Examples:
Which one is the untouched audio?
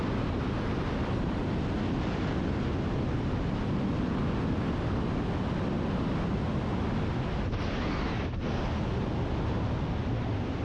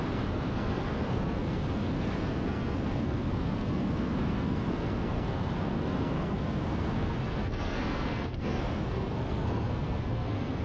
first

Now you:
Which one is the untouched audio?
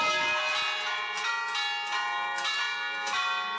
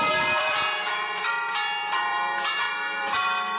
first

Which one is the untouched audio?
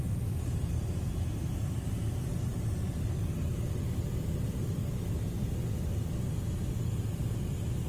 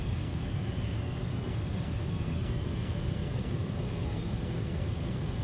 first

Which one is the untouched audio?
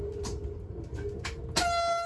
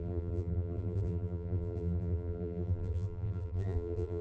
first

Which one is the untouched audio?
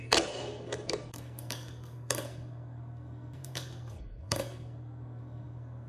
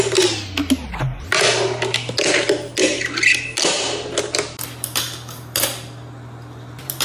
second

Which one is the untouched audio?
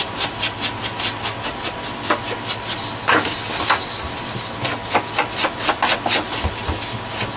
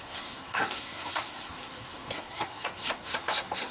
first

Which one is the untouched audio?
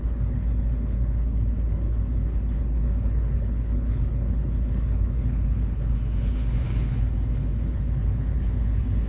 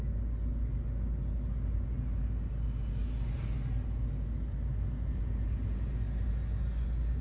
second